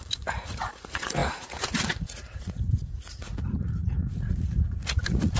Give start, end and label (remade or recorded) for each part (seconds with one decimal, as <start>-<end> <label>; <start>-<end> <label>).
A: 0.0-5.4 remade